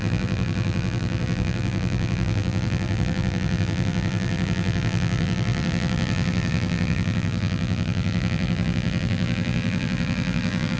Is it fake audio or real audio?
fake